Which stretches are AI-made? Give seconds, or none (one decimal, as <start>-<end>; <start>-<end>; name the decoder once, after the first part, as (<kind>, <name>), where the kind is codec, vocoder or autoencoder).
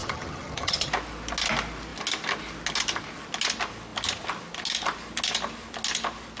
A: 0.0-0.9 (vocoder, HiFi-GAN)